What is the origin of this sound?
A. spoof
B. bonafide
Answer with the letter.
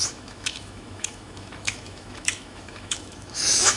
A